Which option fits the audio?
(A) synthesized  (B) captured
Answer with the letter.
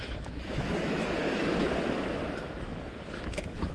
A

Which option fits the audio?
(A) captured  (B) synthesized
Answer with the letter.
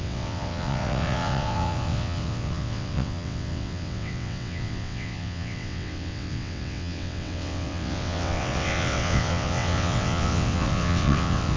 B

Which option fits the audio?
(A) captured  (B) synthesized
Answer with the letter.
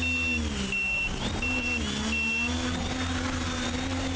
A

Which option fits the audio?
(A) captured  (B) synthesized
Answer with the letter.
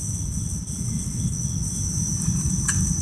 A